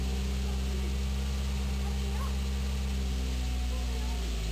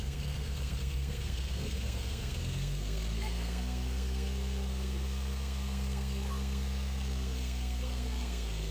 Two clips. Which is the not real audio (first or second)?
second